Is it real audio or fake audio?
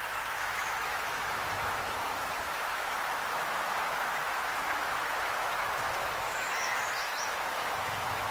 fake